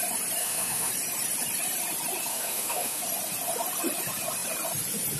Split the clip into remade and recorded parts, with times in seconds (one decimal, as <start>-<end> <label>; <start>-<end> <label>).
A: 0.0-0.4 recorded; 0.4-0.9 remade; 0.9-2.3 recorded; 2.3-3.0 remade; 3.0-5.2 recorded